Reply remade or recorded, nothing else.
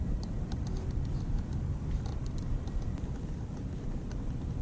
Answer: recorded